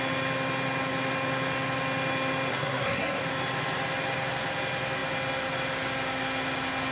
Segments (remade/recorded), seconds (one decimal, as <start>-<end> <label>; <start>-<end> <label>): 0.0-2.5 recorded; 2.5-3.2 remade; 3.2-6.9 recorded